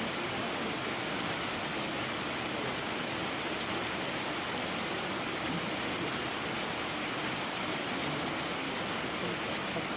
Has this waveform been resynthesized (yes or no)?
no